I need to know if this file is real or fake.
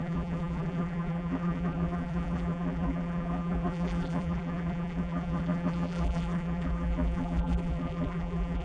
fake